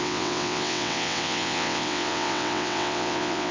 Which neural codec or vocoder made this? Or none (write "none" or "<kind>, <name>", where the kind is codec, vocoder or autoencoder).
vocoder, WaveNeXt